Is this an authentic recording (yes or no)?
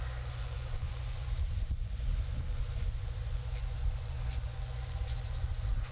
no